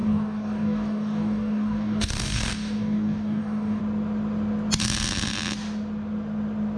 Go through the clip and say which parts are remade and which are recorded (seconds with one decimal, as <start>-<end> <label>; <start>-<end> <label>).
0.0-3.8 remade; 3.8-6.8 recorded